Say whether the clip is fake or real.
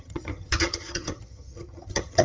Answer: fake